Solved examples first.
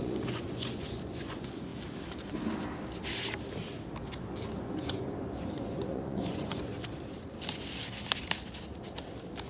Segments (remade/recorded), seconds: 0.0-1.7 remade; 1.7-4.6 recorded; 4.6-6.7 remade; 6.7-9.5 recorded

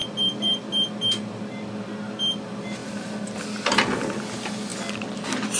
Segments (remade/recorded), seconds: 0.0-5.6 recorded

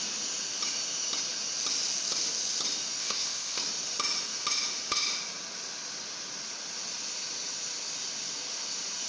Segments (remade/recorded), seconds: 0.0-3.0 recorded; 3.0-3.6 remade; 3.6-9.1 recorded

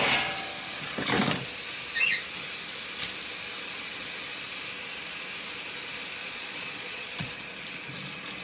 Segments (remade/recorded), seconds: 0.0-6.2 recorded; 6.2-7.3 remade; 7.3-8.4 recorded

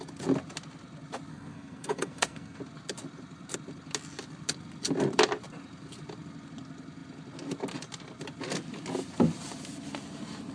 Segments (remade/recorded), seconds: 0.0-1.3 recorded; 1.3-2.6 remade; 2.6-10.5 recorded

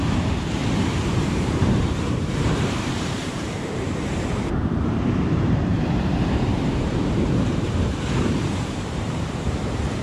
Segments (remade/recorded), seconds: 0.0-0.6 remade; 0.6-1.3 recorded; 1.3-10.0 remade

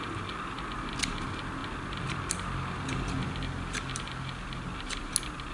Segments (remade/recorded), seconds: 0.0-5.5 recorded

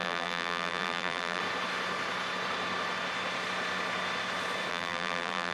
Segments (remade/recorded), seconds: 0.0-1.4 remade; 1.4-4.7 recorded; 4.7-5.5 remade